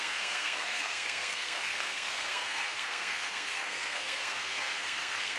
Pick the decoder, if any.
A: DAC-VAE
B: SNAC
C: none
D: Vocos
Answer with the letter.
B